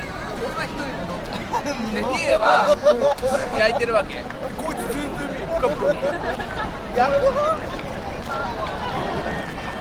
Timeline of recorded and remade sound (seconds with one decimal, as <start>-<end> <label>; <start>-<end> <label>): 0.0-2.3 recorded; 2.3-3.6 remade; 3.6-9.8 recorded